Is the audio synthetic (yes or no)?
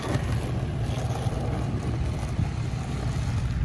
no